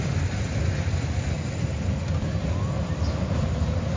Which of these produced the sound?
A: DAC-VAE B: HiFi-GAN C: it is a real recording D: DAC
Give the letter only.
C